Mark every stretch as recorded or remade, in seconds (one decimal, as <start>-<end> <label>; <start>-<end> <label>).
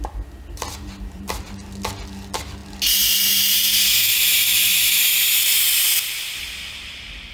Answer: 0.0-0.7 recorded; 0.7-1.5 remade; 1.5-7.3 recorded